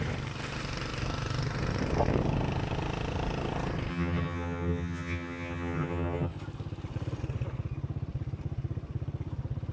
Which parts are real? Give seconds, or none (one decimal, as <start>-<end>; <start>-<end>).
0.0-3.9; 6.3-9.7